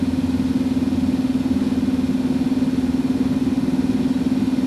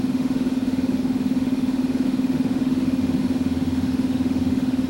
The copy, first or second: second